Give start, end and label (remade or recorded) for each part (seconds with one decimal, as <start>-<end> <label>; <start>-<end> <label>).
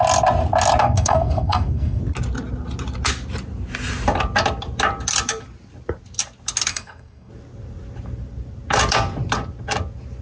0.0-0.8 recorded; 0.8-2.0 remade; 2.0-6.7 recorded; 6.7-7.3 remade; 7.3-10.2 recorded